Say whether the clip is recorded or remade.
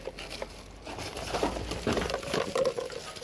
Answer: recorded